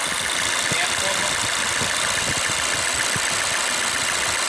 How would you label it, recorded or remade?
recorded